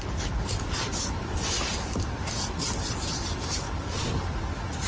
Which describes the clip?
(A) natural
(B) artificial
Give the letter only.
A